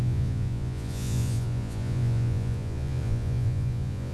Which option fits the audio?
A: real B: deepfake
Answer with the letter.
B